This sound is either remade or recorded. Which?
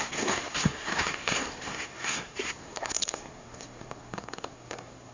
remade